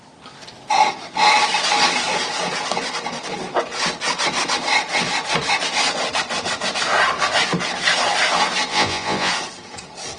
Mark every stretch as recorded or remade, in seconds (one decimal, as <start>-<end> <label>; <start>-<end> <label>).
0.0-8.7 recorded; 8.7-9.3 remade; 9.3-10.2 recorded